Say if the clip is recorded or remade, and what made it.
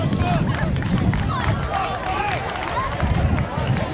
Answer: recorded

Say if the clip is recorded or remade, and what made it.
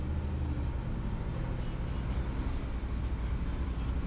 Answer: recorded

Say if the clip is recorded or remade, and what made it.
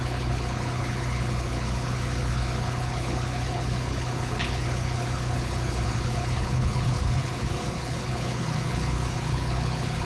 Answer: remade, codec, HILCodec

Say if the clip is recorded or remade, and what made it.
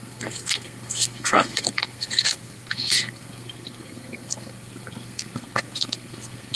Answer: remade, codec, SNAC